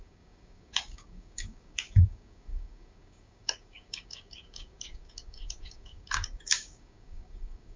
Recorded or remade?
remade